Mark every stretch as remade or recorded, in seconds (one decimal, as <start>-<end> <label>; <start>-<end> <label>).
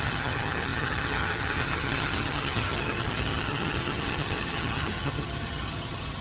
0.0-6.2 remade